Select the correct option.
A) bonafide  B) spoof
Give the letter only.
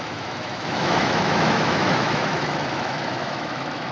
B